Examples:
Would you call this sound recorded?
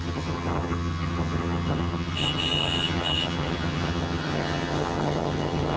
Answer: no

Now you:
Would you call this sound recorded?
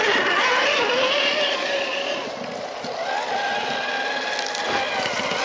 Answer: yes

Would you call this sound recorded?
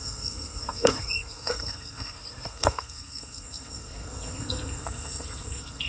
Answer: no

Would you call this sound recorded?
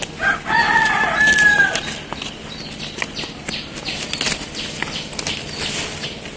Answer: yes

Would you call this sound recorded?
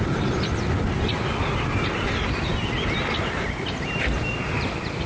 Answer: yes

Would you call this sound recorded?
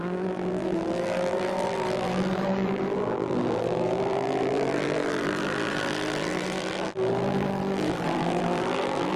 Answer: no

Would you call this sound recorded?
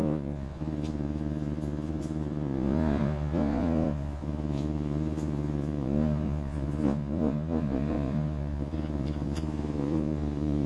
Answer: no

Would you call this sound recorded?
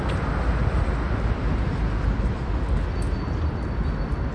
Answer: yes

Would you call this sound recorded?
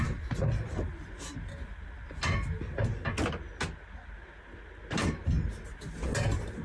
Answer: yes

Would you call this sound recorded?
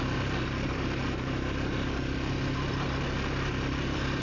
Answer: yes